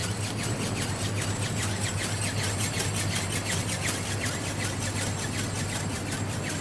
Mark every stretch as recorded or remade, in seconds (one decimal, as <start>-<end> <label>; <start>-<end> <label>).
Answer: 0.0-6.6 recorded